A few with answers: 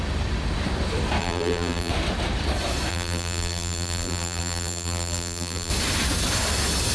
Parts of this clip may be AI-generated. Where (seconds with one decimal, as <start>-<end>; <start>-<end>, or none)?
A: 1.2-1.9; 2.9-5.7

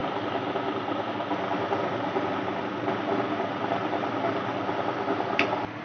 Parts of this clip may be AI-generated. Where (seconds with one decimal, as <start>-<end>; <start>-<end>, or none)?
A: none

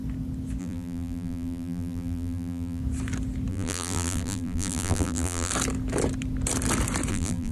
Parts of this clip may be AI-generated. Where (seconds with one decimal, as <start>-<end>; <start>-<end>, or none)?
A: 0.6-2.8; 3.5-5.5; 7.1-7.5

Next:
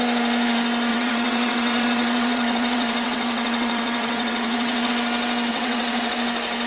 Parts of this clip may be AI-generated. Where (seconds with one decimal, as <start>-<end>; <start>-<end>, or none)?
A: 0.9-4.9; 5.5-6.1

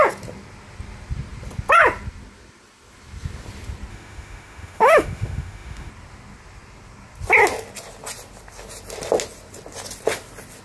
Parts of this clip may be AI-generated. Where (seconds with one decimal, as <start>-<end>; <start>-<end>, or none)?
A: 3.9-5.9

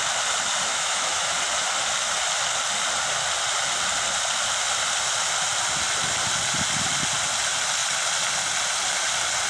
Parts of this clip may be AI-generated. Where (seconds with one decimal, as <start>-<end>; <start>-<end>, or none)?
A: 0.7-1.3

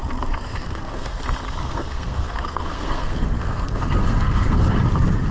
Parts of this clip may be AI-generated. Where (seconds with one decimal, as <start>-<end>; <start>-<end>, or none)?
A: 0.6-1.2; 1.6-4.8